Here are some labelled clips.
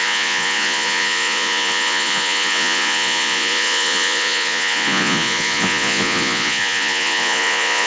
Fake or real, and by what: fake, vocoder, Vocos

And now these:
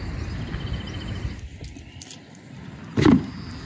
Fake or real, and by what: real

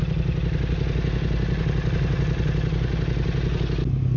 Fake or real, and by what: real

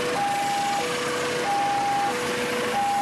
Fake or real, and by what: real